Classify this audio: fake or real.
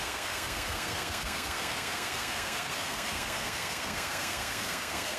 fake